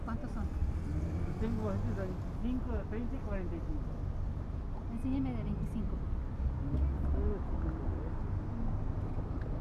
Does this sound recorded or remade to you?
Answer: recorded